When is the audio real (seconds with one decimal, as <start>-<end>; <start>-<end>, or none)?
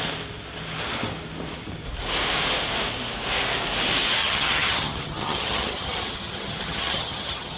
0.0-4.2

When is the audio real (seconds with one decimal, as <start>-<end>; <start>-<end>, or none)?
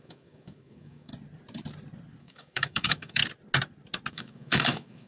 1.1-2.2; 3.2-4.1